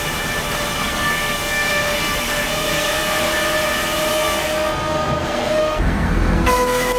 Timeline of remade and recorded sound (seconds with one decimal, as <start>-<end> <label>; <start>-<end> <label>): 0.0-0.7 recorded; 0.7-3.2 remade; 3.2-4.1 recorded; 4.1-7.0 remade